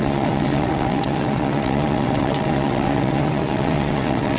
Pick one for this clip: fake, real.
fake